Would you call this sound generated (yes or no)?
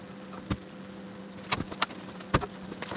no